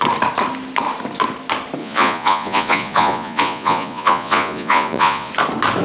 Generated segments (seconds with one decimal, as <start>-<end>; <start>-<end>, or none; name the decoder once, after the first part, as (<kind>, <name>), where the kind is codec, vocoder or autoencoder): 1.8-5.3 (vocoder, Vocos)